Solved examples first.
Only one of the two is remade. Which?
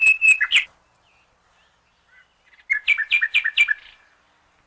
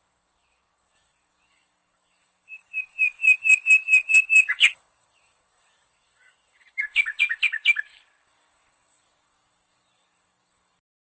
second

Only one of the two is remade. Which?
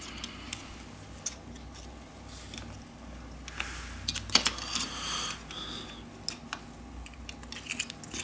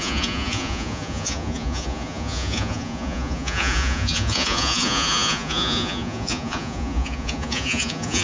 second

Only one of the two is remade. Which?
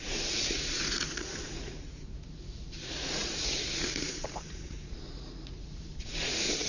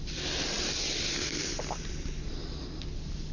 first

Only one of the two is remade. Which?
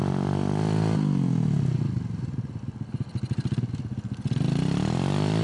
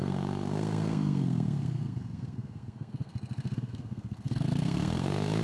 second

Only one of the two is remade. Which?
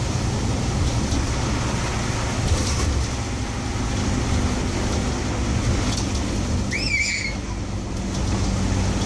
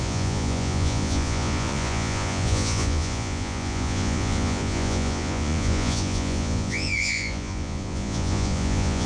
second